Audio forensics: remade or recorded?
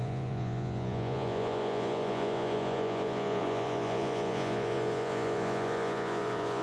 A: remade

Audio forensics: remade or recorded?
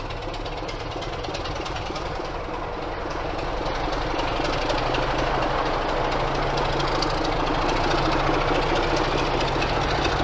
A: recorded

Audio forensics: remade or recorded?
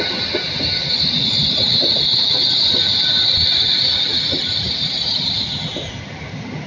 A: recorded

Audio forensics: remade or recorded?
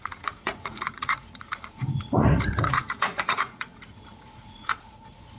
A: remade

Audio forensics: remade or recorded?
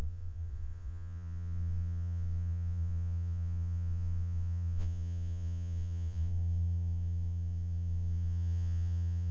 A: remade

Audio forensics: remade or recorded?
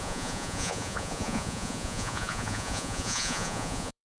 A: remade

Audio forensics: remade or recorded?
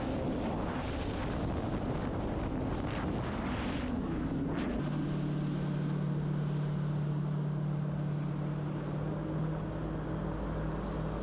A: recorded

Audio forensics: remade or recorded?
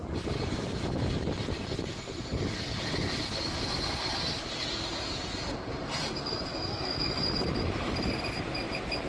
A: recorded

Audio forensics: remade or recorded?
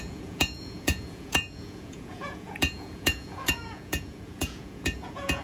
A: remade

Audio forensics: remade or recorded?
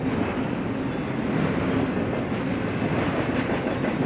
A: recorded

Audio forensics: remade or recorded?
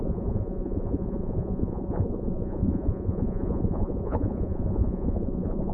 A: remade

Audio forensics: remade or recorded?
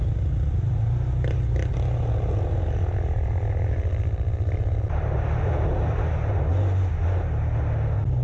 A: recorded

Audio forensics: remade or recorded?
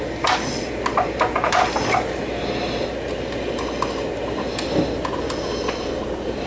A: recorded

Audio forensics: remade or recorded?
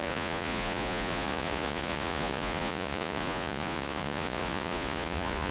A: remade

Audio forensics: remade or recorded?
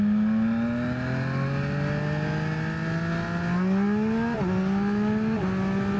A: recorded